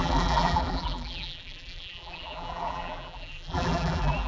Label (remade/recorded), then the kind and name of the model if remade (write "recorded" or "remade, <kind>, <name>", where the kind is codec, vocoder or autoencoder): remade, vocoder, BigVGAN v2